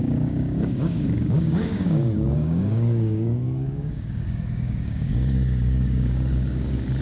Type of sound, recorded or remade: remade